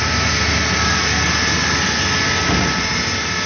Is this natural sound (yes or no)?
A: yes